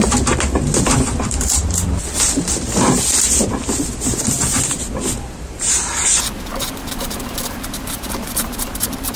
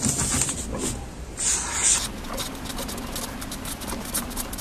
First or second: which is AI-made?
first